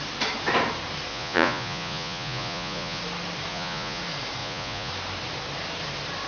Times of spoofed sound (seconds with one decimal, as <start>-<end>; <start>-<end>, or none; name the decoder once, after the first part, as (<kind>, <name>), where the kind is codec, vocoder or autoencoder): 1.1-3.0 (vocoder, Vocos); 3.5-4.0; 4.4-4.9